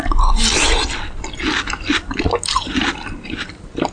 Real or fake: real